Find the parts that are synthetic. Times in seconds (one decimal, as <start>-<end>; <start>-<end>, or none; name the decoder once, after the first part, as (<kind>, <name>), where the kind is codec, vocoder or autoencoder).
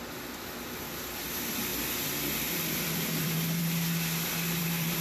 0.0-3.6 (vocoder, BigVGAN v2); 4.6-5.0